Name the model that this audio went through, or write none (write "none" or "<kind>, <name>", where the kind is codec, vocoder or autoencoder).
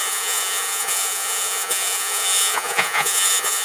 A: vocoder, Vocos